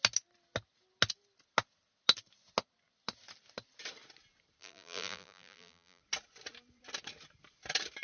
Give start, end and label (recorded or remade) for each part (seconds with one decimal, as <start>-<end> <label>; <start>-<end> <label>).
0.0-4.6 recorded; 4.6-6.0 remade; 6.0-8.0 recorded